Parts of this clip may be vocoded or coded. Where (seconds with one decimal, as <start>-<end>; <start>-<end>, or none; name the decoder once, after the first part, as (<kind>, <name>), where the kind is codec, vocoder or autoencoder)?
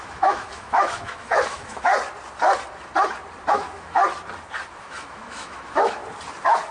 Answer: 0.0-1.9 (autoencoder, DAC-VAE); 3.5-4.0; 4.8-6.0